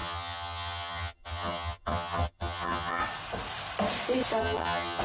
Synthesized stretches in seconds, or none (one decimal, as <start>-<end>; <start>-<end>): 0.0-3.0; 4.4-5.0